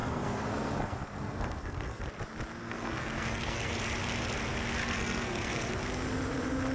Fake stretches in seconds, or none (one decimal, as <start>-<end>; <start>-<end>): 0.0-2.0; 2.6-3.7; 4.8-5.7